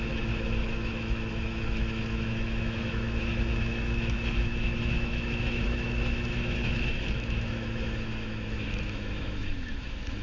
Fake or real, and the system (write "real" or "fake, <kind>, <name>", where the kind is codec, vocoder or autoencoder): fake, autoencoder, DAC-VAE